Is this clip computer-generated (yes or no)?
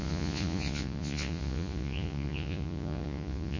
yes